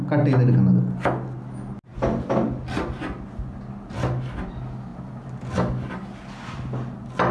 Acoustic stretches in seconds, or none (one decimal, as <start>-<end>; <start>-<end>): 0.0-7.3